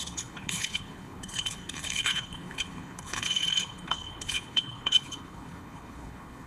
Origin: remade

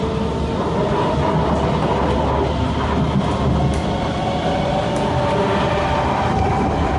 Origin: recorded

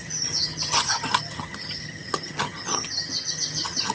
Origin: remade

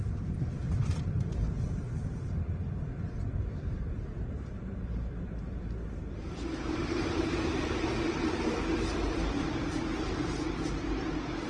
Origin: remade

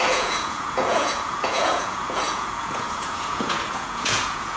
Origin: remade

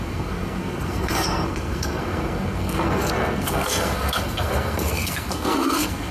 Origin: remade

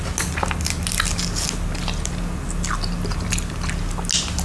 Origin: recorded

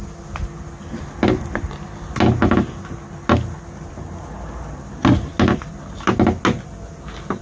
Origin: recorded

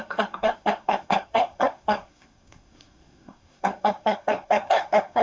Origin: remade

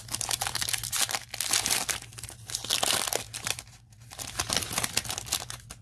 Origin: recorded